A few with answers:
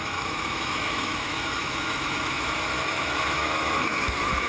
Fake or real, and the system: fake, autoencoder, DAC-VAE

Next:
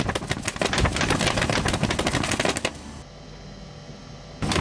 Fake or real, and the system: real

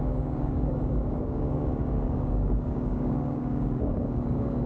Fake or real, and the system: fake, codec, DAC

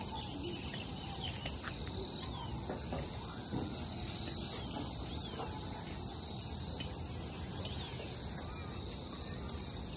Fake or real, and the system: real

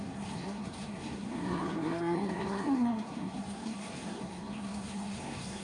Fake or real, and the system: fake, codec, SNAC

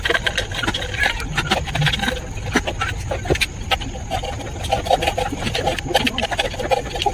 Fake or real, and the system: real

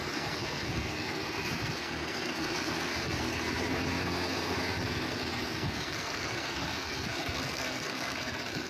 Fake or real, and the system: fake, codec, SNAC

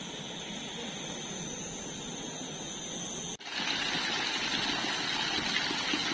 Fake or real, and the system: real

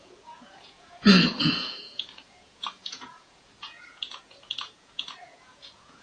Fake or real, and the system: fake, vocoder, Vocos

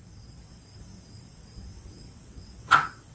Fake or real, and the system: fake, vocoder, WaveNeXt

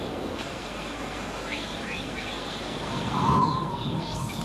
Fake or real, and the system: fake, codec, SNAC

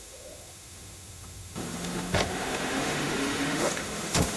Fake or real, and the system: fake, autoencoder, DAC-VAE